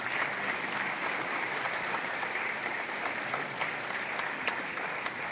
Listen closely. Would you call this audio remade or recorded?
recorded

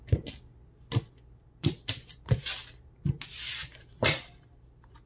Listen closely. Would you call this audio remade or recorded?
recorded